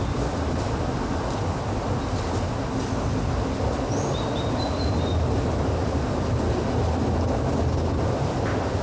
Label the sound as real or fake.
real